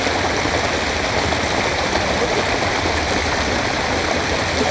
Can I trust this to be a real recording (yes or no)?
yes